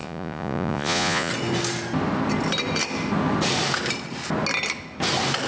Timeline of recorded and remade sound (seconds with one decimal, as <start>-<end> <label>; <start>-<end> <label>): 0.0-1.3 remade; 1.3-5.5 recorded